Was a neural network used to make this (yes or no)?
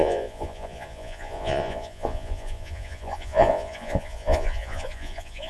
yes